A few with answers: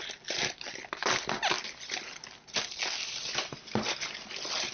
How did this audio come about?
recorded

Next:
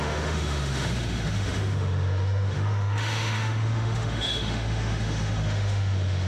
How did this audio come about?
remade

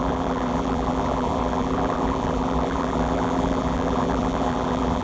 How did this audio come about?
remade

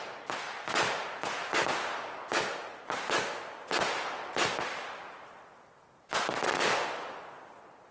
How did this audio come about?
recorded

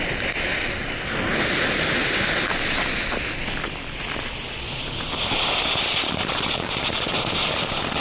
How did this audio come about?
recorded